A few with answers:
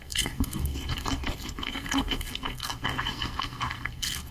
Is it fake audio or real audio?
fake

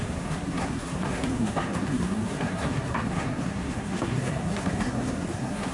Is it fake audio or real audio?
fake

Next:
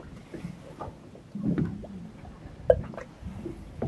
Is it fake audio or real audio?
real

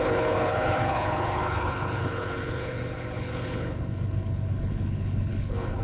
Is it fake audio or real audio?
fake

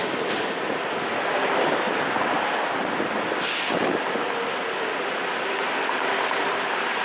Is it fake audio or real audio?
real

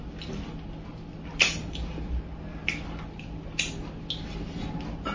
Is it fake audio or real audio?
real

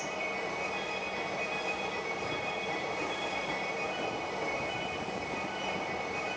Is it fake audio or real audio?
real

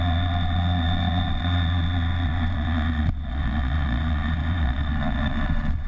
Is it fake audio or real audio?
fake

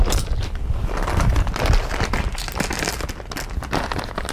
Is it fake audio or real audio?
real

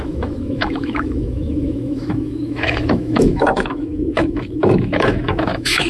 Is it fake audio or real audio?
fake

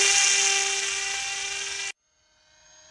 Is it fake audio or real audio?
real